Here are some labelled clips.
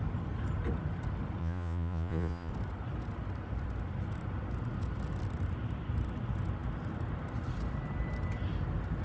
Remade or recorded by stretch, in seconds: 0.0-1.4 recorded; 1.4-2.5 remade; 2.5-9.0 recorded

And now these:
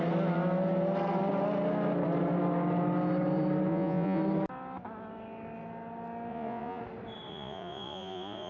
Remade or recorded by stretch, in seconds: 0.0-3.7 recorded; 3.7-4.2 remade; 4.2-6.3 recorded; 6.3-6.8 remade; 6.8-7.3 recorded; 7.3-8.5 remade

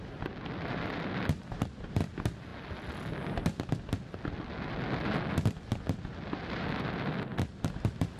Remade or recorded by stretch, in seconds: 0.0-7.3 recorded; 7.3-8.2 remade

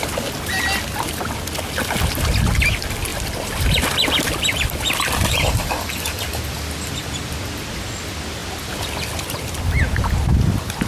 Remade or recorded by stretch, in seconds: 0.0-3.1 recorded; 3.1-6.4 remade; 6.4-10.9 recorded